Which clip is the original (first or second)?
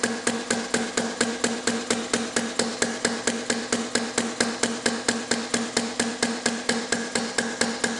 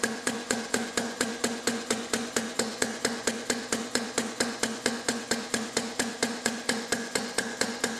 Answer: first